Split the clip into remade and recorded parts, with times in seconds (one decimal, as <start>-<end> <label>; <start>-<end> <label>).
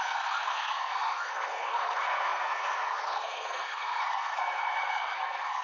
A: 0.0-5.6 remade